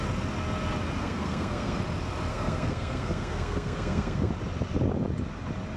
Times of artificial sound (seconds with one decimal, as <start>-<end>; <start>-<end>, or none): 1.0-1.8; 2.3-4.3